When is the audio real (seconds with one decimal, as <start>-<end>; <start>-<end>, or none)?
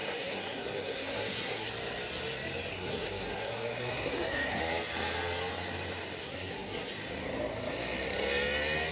1.7-2.7; 4.6-6.2; 6.9-8.9